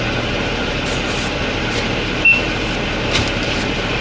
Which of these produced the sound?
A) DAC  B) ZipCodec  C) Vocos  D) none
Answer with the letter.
D